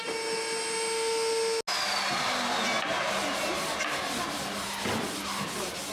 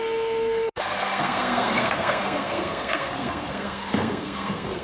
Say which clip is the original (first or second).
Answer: first